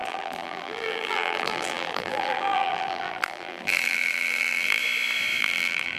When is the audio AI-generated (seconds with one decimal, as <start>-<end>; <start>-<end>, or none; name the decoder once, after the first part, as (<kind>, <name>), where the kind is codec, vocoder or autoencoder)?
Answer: 0.0-4.8 (vocoder, BigVGAN v2); 5.4-6.0